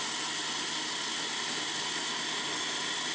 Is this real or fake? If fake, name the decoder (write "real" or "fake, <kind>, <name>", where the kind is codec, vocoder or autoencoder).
real